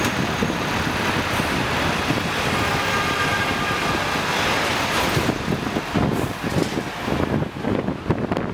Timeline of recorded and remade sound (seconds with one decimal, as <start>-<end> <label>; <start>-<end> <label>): 0.0-3.3 recorded; 3.3-4.3 remade; 4.3-4.7 recorded; 4.7-5.8 remade; 5.8-8.5 recorded